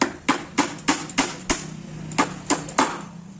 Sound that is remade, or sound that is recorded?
recorded